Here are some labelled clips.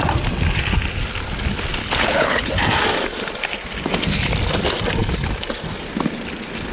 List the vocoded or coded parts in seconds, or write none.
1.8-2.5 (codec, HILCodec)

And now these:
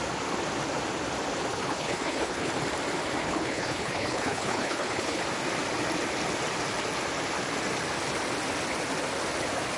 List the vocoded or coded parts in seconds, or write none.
1.5-2.5 (codec, HILCodec); 3.2-5.2

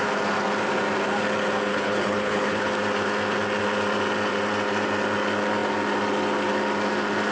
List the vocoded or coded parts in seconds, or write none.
1.7-2.7 (codec, HILCodec)

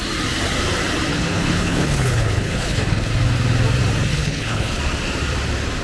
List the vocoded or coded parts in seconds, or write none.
1.1-3.1 (codec, HILCodec); 4.1-4.8

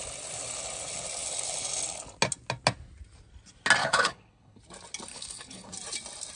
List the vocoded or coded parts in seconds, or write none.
3.8-4.6 (codec, HILCodec); 5.1-5.7

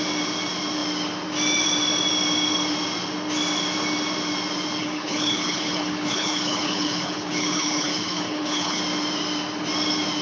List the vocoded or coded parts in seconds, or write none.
4.8-8.8 (codec, HILCodec)

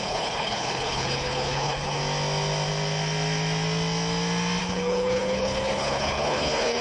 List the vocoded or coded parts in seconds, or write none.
0.0-2.0 (codec, HILCodec); 4.6-6.8